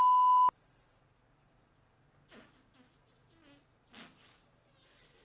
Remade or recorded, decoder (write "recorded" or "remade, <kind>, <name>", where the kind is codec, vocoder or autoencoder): recorded